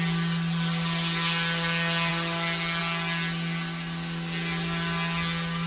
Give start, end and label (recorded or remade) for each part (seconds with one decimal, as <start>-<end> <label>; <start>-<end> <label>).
0.0-5.7 recorded